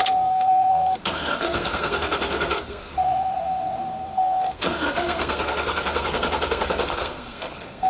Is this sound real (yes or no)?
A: no